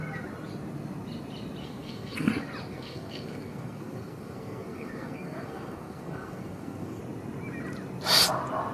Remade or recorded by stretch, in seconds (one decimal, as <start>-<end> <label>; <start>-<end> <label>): 0.0-1.6 recorded; 1.6-2.3 remade; 2.3-2.7 recorded; 2.7-7.0 remade; 7.0-8.7 recorded